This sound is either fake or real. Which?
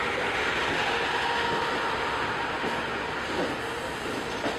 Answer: real